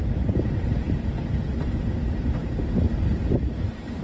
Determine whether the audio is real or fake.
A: real